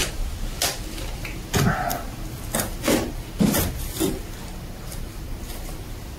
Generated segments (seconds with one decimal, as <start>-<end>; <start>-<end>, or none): none